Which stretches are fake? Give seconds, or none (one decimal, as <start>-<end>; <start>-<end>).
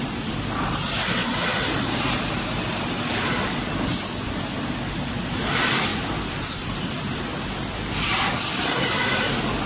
0.0-3.9; 4.6-9.7